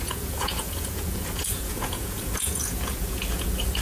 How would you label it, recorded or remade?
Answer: remade